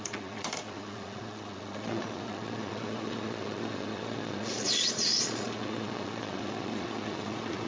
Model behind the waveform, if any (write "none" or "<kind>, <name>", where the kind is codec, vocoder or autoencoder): vocoder, Vocos